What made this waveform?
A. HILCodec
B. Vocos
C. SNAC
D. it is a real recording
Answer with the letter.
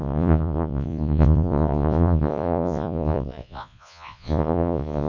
B